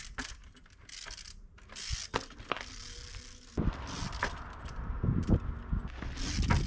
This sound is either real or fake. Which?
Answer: real